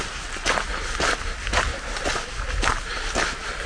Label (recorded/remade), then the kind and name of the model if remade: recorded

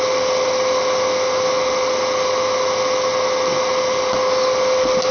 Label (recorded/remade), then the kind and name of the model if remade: recorded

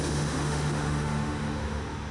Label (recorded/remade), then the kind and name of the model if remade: remade, autoencoder, DAC-VAE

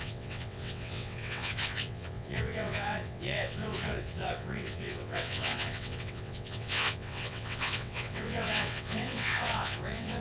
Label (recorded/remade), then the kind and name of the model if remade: remade, vocoder, WaveNeXt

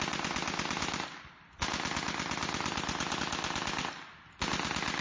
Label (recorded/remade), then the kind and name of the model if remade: recorded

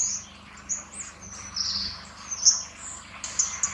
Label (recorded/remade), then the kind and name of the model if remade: recorded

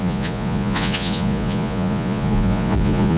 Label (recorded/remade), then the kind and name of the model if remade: remade, vocoder, Vocos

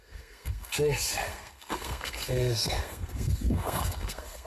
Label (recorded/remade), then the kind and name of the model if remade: remade, codec, SNAC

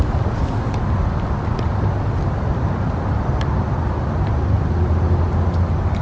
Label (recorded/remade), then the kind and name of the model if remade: recorded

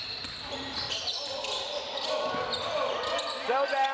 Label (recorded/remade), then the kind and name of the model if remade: recorded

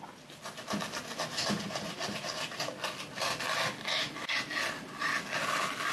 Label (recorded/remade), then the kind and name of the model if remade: recorded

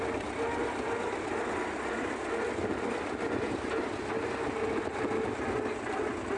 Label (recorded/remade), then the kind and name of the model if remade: recorded